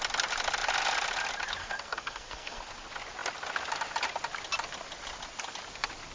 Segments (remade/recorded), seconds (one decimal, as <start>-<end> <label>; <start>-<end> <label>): 0.0-1.6 recorded; 1.6-2.6 remade; 2.6-6.1 recorded